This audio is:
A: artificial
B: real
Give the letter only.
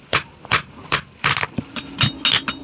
B